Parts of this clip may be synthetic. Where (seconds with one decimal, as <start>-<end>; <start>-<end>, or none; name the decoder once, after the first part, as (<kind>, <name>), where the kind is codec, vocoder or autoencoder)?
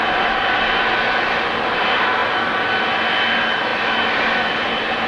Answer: none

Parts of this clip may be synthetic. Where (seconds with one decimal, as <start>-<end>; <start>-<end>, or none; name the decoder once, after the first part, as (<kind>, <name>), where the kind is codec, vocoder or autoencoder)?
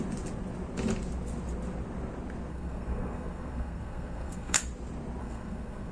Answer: 2.5-4.6 (codec, SNAC); 5.2-5.9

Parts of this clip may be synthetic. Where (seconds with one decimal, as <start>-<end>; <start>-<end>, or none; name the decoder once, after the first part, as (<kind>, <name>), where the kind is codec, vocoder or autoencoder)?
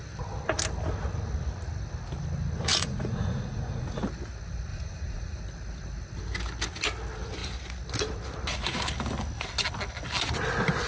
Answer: 2.7-4.0 (vocoder, Vocos); 4.7-5.4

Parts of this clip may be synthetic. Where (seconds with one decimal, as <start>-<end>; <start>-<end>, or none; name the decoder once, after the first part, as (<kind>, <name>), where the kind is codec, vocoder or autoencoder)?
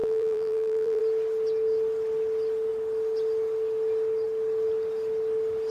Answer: 0.0-1.0 (vocoder, BigVGAN v2)